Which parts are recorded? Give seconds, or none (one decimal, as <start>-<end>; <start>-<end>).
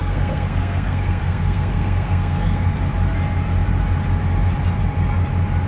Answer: 2.8-5.7